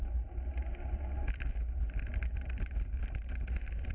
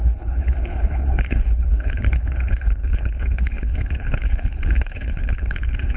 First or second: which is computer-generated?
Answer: second